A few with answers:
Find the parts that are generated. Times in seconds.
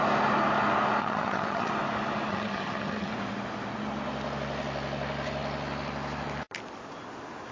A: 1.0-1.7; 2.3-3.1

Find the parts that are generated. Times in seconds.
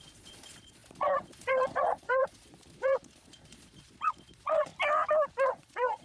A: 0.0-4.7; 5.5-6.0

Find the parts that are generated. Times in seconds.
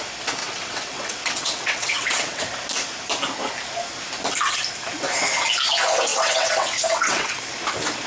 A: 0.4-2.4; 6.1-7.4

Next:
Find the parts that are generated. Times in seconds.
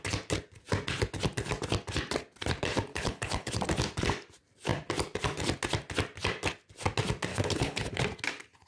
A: 2.9-3.5; 7.3-8.0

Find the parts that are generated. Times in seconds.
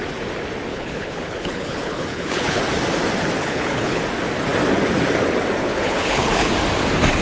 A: 0.7-2.6; 3.4-4.0; 5.6-6.5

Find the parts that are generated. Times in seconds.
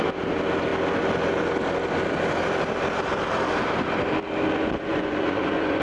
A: 4.9-5.8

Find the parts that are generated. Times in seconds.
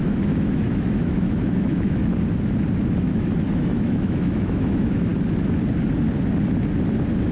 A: 0.0-2.0; 3.0-5.1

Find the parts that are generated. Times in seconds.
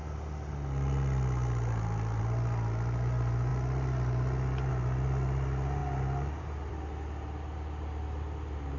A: none